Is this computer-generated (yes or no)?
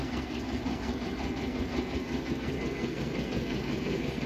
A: yes